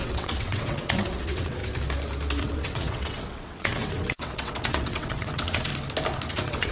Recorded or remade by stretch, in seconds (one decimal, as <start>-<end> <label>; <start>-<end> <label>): 0.0-1.6 remade; 1.6-2.4 recorded; 2.4-5.7 remade; 5.7-6.3 recorded; 6.3-6.7 remade